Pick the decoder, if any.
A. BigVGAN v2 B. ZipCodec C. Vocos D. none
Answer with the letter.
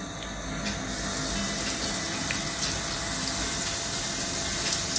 D